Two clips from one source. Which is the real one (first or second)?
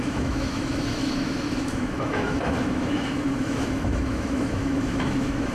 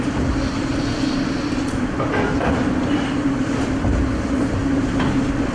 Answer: second